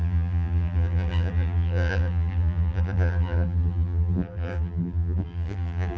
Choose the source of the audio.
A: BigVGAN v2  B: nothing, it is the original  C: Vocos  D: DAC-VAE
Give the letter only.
A